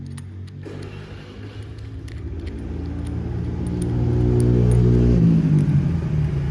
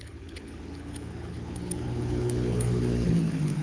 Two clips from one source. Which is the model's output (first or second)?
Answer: second